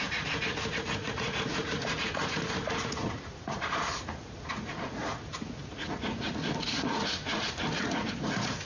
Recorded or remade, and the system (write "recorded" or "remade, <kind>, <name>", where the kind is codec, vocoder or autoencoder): remade, vocoder, Vocos